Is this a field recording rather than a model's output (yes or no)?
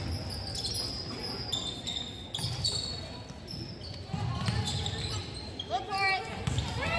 yes